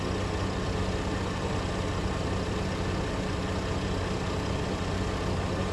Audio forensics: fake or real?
real